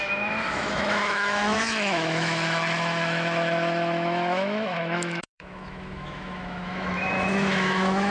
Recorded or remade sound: remade